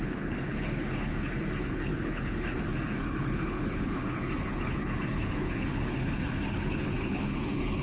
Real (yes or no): no